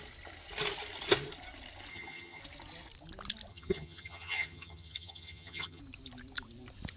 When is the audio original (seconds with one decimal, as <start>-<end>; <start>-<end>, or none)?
0.0-1.9; 2.4-3.5; 5.8-7.0